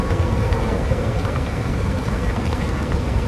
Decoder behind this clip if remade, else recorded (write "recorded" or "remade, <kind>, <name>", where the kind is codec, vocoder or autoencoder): remade, codec, SNAC